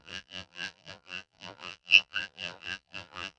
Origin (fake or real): fake